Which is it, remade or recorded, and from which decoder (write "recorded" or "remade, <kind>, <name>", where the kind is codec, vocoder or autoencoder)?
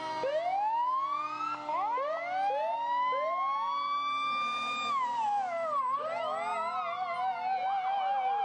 recorded